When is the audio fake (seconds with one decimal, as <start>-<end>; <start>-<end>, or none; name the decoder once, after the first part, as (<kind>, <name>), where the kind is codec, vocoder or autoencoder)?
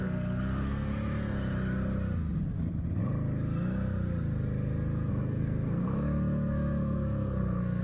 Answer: 0.0-0.9 (codec, SNAC); 5.1-7.8